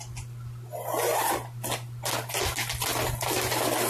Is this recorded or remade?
recorded